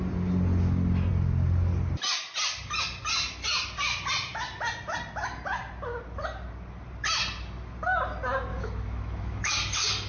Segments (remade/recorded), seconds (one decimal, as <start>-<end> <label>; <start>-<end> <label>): 0.0-8.5 recorded; 8.5-9.5 remade; 9.5-10.1 recorded